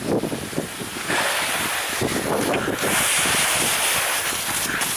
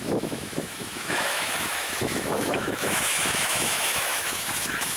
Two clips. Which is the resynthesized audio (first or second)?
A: second